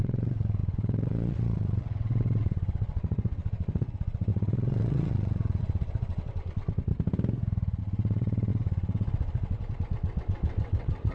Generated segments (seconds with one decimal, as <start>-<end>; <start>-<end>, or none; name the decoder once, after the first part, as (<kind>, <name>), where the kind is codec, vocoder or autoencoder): 0.0-6.9 (vocoder, WaveNeXt); 7.8-11.1